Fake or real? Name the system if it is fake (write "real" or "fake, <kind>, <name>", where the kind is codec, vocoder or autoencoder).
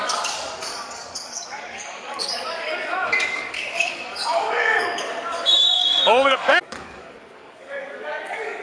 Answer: fake, codec, DAC